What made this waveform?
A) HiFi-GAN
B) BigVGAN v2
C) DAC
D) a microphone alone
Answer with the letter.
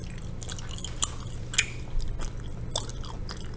D